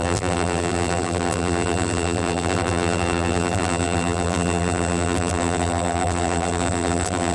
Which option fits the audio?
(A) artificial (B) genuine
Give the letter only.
A